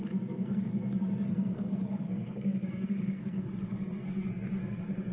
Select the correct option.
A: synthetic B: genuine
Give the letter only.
A